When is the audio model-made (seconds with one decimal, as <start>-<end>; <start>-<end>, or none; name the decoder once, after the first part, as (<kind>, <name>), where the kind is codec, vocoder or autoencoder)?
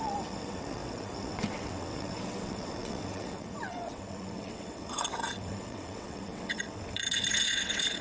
0.0-8.0 (vocoder, WaveNeXt)